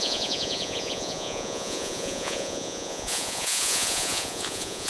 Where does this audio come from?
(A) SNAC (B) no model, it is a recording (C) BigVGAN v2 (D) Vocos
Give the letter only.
D